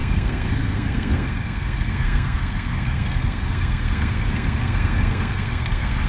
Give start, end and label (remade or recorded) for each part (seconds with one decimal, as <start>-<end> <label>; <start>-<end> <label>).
0.0-6.1 remade